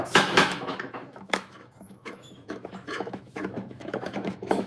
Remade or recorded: remade